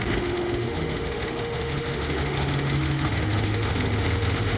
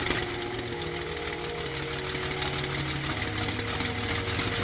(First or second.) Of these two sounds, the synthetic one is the first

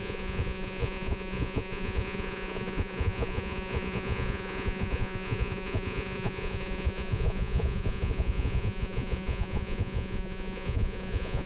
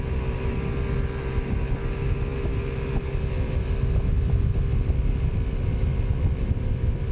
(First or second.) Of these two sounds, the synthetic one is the first